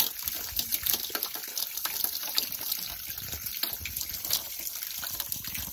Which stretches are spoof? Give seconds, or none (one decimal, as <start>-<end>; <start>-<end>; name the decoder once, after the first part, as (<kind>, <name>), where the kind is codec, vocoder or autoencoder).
0.0-0.7 (vocoder, BigVGAN v2); 1.8-5.7

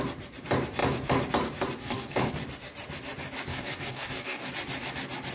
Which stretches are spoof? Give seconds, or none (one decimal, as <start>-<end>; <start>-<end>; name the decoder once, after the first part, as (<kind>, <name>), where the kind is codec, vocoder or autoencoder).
1.8-2.3 (codec, DAC); 3.5-4.5

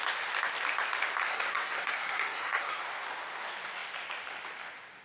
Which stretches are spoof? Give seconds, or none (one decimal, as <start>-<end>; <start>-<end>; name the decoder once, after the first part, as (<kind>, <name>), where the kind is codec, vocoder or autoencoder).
1.3-2.8 (codec, SNAC)

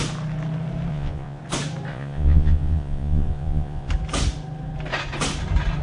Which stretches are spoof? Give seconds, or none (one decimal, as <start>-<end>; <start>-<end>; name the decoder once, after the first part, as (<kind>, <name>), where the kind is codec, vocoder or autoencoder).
0.9-1.4 (vocoder, Vocos); 1.9-3.9

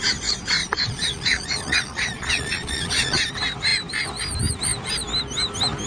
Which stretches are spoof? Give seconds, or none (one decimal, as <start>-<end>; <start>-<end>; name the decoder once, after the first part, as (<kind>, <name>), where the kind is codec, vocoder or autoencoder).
0.6-3.2 (vocoder, Vocos)

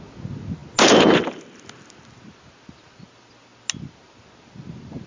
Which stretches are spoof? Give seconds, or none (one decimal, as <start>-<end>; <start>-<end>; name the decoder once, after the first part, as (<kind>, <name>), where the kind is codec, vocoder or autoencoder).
none